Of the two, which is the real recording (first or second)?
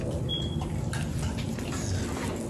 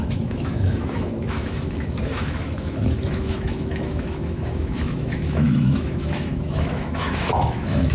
first